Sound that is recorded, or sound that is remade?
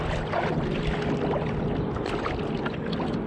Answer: recorded